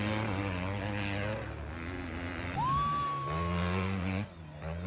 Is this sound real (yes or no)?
yes